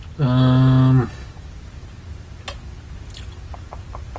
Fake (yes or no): no